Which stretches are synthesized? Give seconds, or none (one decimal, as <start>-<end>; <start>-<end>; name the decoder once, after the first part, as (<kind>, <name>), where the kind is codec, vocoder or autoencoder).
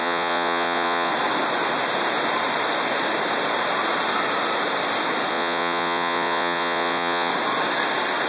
0.0-1.1 (vocoder, Vocos); 5.3-7.3